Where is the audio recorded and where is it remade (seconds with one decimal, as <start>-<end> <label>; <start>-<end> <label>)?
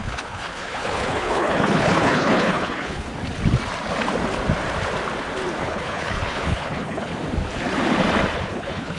0.0-3.1 remade; 3.1-5.6 recorded; 5.6-7.1 remade; 7.1-8.5 recorded; 8.5-9.0 remade